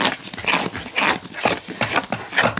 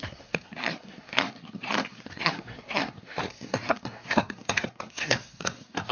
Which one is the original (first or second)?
first